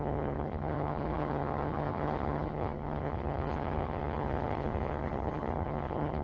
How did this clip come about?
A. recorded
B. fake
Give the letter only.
B